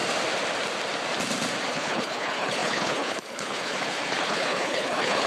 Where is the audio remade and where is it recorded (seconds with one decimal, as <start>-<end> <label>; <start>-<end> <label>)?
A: 0.0-1.7 recorded; 1.7-5.3 remade